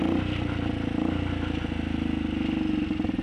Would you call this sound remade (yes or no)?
no